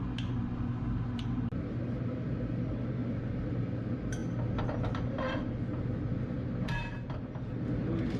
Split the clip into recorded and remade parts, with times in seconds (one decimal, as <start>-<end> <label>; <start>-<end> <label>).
0.0-8.2 recorded